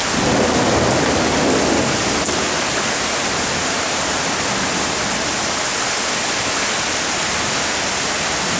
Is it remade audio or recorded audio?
recorded